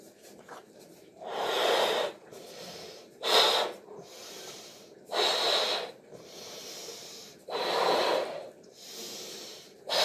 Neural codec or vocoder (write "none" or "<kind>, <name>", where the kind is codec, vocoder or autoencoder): vocoder, BigVGAN v2